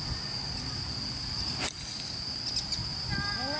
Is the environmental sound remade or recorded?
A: recorded